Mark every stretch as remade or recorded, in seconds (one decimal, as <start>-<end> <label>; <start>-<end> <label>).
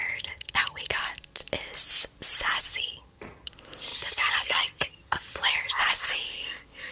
0.0-0.9 remade; 0.9-2.7 recorded; 2.7-3.5 remade; 3.5-3.9 recorded; 3.9-5.8 remade; 5.8-6.9 recorded